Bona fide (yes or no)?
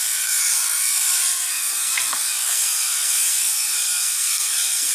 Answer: no